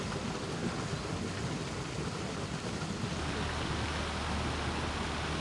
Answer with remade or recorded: recorded